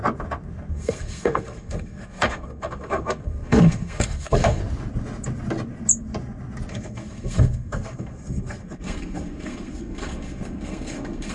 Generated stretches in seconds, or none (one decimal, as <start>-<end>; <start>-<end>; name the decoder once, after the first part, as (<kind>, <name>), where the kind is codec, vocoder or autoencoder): 0.7-4.6 (codec, SNAC); 6.7-11.3